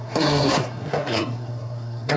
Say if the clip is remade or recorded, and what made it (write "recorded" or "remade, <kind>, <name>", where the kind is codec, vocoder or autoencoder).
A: remade, codec, SNAC